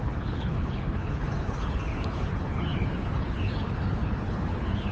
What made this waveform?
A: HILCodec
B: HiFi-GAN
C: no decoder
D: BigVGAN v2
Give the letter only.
A